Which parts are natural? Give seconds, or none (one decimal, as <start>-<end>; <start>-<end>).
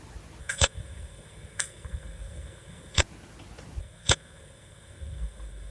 0.0-0.4; 3.0-3.8